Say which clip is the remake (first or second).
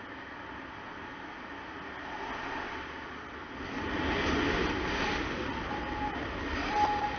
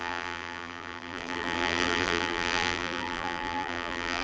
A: second